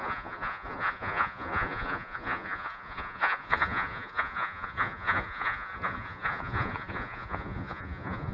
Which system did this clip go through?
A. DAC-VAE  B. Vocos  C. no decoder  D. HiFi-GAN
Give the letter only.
B